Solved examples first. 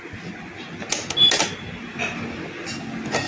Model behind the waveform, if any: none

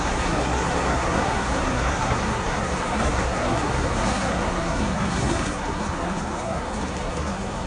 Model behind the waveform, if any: codec, SNAC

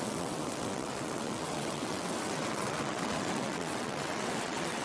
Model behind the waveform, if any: vocoder, WaveNeXt